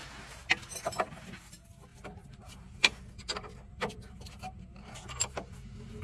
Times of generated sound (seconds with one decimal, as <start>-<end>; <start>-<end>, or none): 1.9-5.5